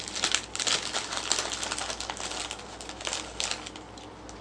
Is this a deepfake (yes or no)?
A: no